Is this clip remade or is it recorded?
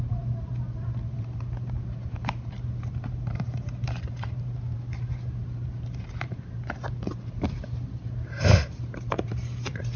remade